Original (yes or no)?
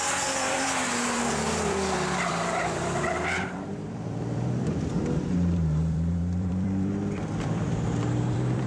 no